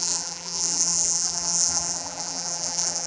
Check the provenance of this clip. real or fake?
fake